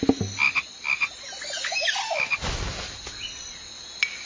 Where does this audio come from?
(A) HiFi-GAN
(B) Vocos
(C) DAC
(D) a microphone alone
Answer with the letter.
D